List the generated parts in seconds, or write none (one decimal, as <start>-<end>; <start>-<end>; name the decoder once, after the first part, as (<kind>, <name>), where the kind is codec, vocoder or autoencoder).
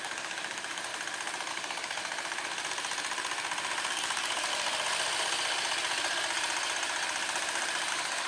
0.0-0.9 (codec, DAC); 1.5-2.0; 3.9-4.5; 7.9-8.3